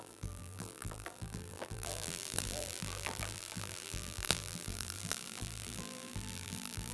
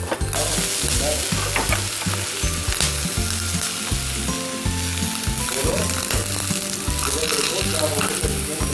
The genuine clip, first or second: second